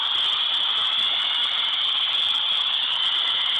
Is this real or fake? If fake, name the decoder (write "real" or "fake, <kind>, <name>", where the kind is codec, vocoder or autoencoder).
real